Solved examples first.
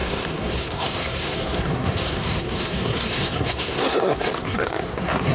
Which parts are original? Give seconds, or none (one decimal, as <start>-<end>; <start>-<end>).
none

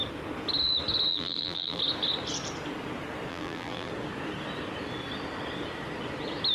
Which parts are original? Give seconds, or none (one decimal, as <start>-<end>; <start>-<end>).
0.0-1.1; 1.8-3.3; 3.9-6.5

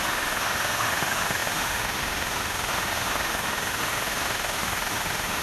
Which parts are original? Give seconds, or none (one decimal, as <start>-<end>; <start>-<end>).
none

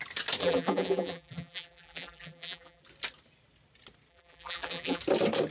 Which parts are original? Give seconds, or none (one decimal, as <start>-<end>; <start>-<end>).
0.0-0.4; 2.8-4.1; 5.0-5.5

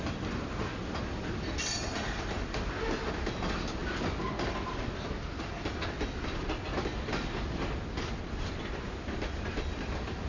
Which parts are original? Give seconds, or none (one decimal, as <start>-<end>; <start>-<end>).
0.0-10.3